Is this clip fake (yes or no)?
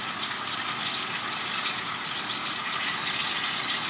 no